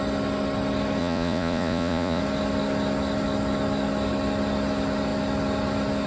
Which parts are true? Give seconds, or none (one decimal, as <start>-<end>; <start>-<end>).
0.0-1.0; 2.2-6.1